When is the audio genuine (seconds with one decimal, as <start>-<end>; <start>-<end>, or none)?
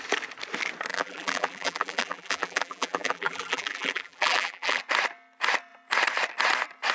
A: 0.0-0.9; 4.8-6.9